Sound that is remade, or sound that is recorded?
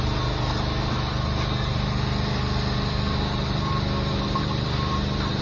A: recorded